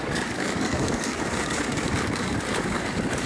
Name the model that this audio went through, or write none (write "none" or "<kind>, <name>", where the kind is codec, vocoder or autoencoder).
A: codec, DAC